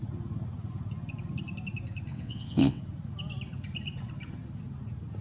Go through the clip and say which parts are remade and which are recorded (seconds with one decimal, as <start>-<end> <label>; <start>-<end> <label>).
0.0-2.1 recorded; 2.1-2.8 remade; 2.8-5.2 recorded